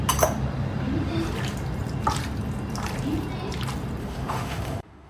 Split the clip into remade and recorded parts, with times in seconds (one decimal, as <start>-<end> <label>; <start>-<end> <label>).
0.0-4.0 recorded; 4.0-5.1 remade